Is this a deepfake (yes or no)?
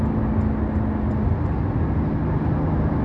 no